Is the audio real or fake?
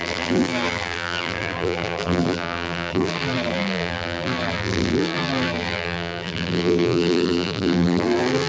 fake